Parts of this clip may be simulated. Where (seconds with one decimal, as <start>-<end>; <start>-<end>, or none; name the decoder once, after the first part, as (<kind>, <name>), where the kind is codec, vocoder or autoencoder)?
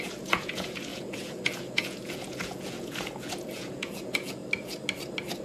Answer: 0.0-4.4 (vocoder, Vocos)